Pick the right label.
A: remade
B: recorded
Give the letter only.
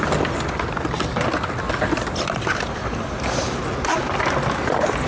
B